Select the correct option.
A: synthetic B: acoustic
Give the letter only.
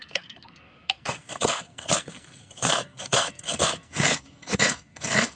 A